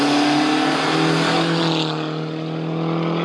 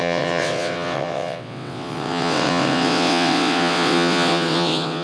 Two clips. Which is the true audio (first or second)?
first